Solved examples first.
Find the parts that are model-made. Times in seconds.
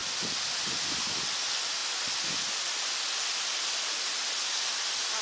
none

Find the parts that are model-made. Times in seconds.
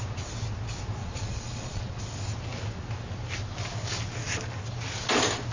1.0-2.0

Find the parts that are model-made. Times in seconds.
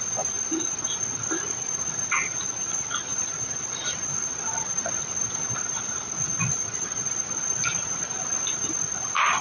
none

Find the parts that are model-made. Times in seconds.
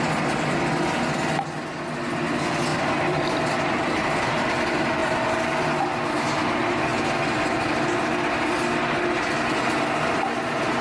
2.7-3.4; 5.0-5.8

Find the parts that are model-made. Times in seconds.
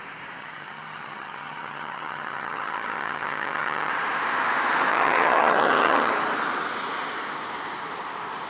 0.4-3.9; 4.9-6.1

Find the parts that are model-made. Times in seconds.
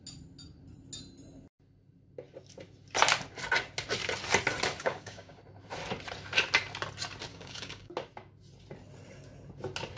4.8-5.4; 7.3-7.9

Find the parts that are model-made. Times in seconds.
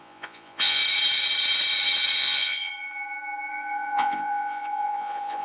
0.0-0.8; 2.2-2.7; 3.5-5.4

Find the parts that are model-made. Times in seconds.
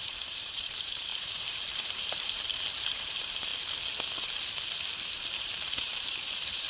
0.0-3.5; 5.4-6.7